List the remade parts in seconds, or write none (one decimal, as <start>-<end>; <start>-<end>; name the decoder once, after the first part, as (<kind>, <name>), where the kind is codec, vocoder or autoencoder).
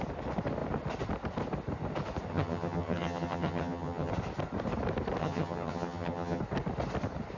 2.3-4.1 (vocoder, HiFi-GAN); 5.2-6.4